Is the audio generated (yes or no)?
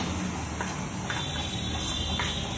no